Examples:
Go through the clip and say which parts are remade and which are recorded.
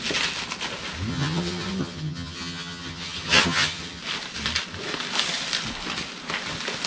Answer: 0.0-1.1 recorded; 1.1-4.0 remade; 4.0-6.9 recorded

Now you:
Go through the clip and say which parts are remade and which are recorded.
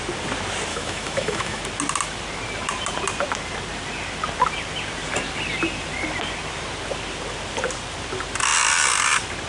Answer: 0.0-0.7 recorded; 0.7-1.6 remade; 1.6-9.5 recorded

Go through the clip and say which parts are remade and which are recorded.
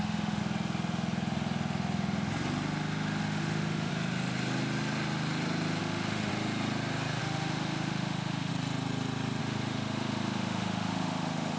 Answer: 0.0-0.4 remade; 0.4-3.2 recorded; 3.2-3.9 remade; 3.9-5.8 recorded; 5.8-6.3 remade; 6.3-7.2 recorded; 7.2-8.5 remade; 8.5-9.4 recorded; 9.4-11.6 remade